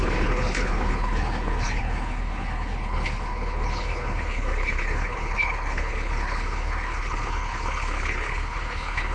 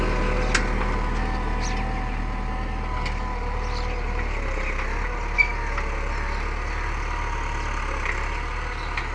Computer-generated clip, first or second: first